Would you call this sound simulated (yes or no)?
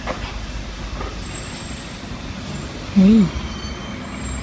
no